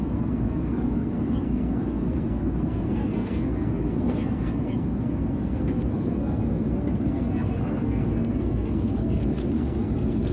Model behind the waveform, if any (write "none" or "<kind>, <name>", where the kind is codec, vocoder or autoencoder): codec, SNAC